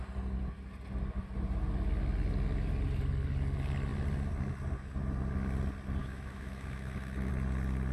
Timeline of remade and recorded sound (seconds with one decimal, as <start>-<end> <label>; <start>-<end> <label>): 0.0-6.0 recorded; 6.0-7.3 remade; 7.3-7.9 recorded